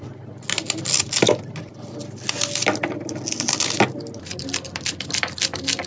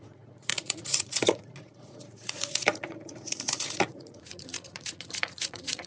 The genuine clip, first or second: first